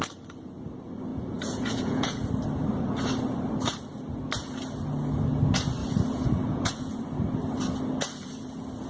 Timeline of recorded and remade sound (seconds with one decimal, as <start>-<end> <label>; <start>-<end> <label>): 0.0-1.1 recorded; 1.1-2.3 remade; 2.3-5.8 recorded; 5.8-7.0 remade; 7.0-8.9 recorded